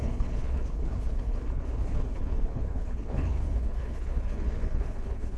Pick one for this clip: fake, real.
fake